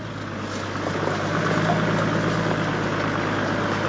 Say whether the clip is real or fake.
real